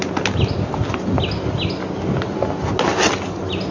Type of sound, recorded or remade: recorded